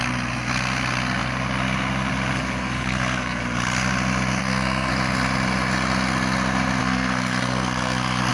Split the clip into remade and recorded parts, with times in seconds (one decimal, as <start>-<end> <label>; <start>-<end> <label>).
0.0-2.6 recorded; 2.6-3.4 remade; 3.4-4.4 recorded; 4.4-4.9 remade; 4.9-6.8 recorded; 6.8-8.3 remade